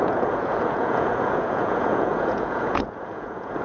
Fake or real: fake